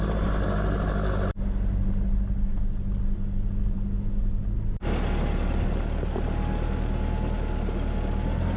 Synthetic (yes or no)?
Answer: no